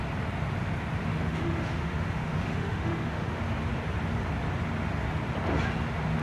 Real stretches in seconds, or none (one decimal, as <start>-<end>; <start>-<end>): 0.0-1.1; 3.4-6.2